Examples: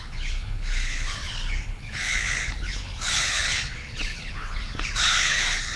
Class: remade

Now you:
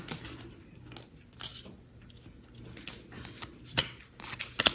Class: recorded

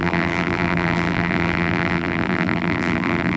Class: remade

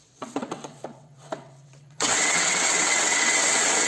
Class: remade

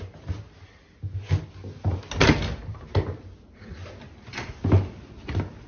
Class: recorded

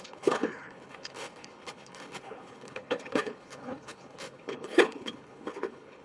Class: remade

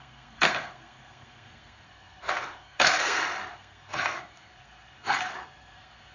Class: remade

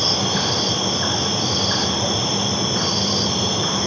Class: recorded